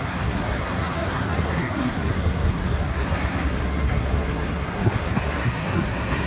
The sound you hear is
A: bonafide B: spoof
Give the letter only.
B